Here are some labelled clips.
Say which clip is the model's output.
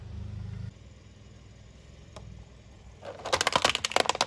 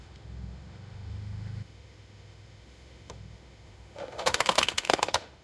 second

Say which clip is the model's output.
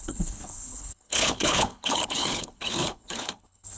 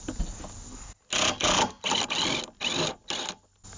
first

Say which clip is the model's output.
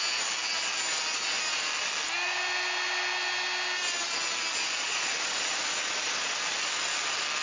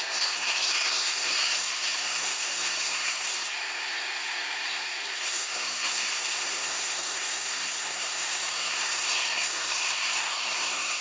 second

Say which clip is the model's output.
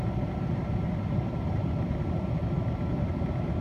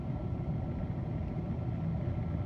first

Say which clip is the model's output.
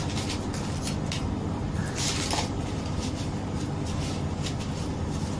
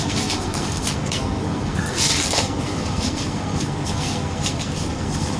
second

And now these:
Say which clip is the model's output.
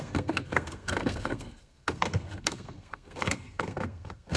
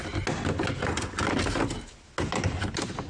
first